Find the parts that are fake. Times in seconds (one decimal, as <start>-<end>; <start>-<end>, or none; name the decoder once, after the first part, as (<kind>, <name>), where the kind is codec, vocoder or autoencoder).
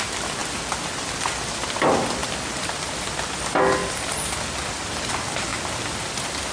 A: none